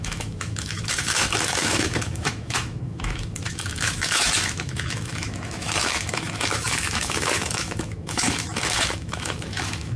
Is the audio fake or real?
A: fake